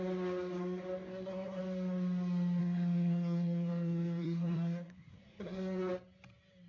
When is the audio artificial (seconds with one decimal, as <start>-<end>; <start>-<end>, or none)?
1.1-1.6; 2.6-5.9